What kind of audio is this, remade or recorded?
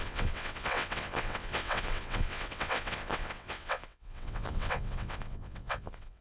remade